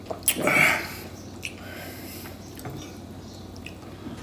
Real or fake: real